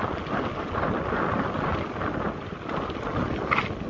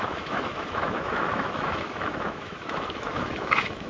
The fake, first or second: second